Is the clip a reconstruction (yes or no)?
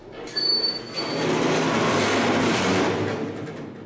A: no